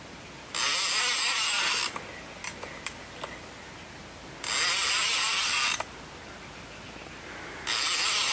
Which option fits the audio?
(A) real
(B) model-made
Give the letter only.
A